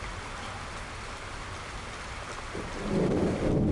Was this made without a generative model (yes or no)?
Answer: yes